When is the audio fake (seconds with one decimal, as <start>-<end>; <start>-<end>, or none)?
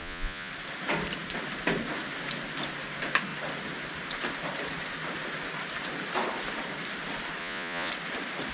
0.0-0.5; 7.4-7.9